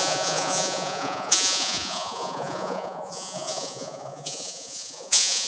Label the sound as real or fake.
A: fake